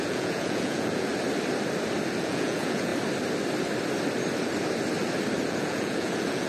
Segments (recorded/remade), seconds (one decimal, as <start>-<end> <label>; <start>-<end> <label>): 0.0-1.1 remade; 1.1-2.2 recorded; 2.2-2.9 remade; 2.9-5.5 recorded; 5.5-6.5 remade